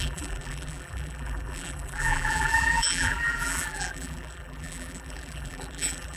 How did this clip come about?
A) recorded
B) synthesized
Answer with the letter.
B